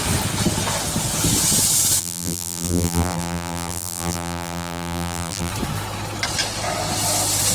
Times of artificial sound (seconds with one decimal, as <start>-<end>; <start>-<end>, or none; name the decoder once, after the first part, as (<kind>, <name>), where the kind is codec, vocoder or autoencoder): 2.0-5.5 (vocoder, BigVGAN v2)